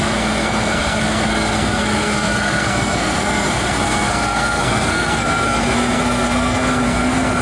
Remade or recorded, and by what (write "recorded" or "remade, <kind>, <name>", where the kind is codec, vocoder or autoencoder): remade, codec, SNAC